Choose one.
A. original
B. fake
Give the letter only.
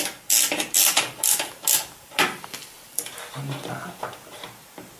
A